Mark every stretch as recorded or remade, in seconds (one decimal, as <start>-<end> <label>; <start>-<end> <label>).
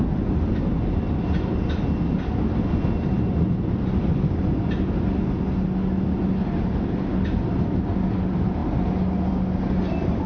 0.0-10.3 recorded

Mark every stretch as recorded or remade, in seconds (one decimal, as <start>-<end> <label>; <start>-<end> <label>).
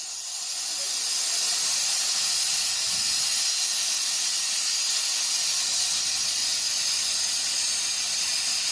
0.0-1.0 remade; 1.0-6.4 recorded; 6.4-7.2 remade; 7.2-8.7 recorded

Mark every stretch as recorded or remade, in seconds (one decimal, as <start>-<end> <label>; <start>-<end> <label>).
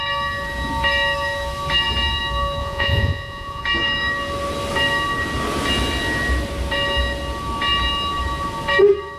0.0-2.6 recorded; 2.6-3.6 remade; 3.6-9.2 recorded